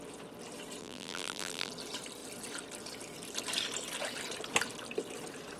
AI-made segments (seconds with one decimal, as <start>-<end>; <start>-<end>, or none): 0.8-1.7